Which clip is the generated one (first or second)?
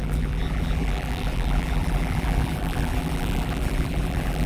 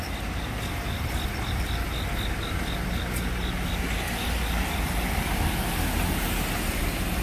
first